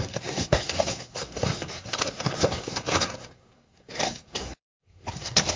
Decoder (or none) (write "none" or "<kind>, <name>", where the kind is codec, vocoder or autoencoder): codec, SNAC